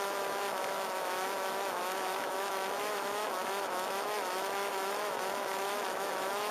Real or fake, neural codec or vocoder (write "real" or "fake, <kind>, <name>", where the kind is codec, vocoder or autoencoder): fake, autoencoder, DAC-VAE